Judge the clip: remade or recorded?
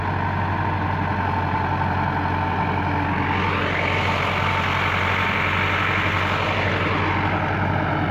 recorded